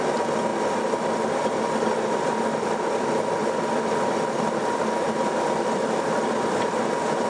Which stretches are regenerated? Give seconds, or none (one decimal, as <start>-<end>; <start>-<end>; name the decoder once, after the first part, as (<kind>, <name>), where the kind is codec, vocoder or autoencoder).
none